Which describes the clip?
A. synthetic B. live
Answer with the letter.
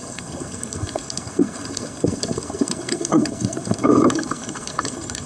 A